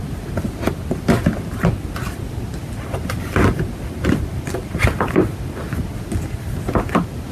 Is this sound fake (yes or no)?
no